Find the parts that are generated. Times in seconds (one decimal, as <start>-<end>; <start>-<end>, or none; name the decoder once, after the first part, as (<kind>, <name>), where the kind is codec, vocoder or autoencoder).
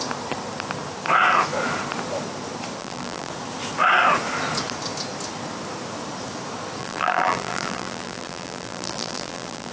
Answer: 2.8-3.3 (vocoder, BigVGAN v2); 6.8-9.7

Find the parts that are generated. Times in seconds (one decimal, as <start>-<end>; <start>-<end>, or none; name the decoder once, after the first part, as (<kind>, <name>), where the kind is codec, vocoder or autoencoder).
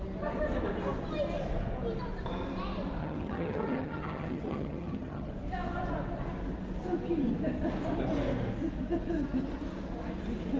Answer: 3.0-5.3 (vocoder, HiFi-GAN)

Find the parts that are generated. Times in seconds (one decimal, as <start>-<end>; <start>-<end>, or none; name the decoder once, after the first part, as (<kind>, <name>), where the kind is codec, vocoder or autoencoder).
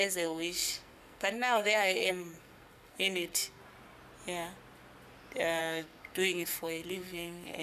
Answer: 0.0-3.6 (codec, SNAC); 5.6-7.6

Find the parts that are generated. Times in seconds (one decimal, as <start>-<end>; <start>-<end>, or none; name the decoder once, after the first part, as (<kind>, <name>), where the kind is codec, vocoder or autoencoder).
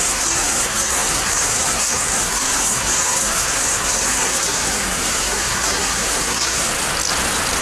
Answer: 0.0-6.7 (codec, SNAC)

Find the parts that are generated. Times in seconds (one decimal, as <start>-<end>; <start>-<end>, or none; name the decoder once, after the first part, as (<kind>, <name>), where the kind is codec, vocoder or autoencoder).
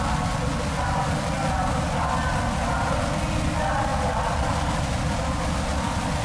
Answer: none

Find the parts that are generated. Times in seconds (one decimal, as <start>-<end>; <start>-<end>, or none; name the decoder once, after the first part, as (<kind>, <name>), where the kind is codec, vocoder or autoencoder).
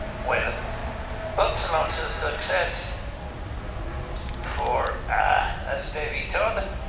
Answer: none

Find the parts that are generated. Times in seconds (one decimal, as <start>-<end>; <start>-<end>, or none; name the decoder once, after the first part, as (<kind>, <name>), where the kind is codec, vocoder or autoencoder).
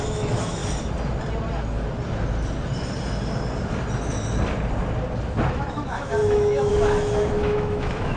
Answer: 0.0-0.6 (autoencoder, DAC-VAE); 5.5-8.2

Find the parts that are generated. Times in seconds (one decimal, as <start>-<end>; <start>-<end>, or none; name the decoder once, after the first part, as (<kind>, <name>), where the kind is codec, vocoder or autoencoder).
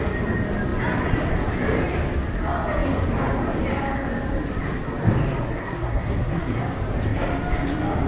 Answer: 5.6-6.6 (codec, SNAC)